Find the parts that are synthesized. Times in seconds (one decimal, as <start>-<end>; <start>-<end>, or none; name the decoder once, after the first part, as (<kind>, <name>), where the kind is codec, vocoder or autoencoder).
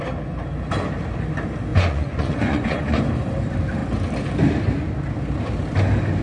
1.7-3.0 (vocoder, Vocos)